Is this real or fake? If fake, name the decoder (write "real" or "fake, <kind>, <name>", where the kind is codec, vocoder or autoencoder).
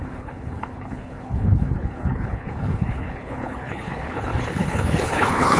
fake, codec, HILCodec